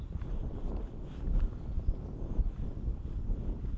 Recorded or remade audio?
recorded